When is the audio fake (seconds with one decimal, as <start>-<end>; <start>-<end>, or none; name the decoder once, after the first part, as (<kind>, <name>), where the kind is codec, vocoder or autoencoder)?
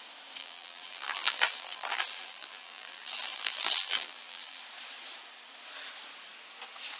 0.4-4.6 (vocoder, BigVGAN v2)